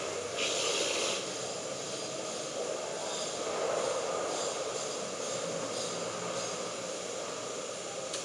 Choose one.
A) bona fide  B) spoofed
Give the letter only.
A